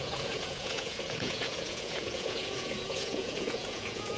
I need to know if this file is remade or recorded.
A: remade